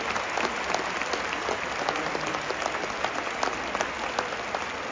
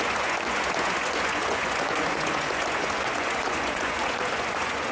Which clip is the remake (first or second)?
second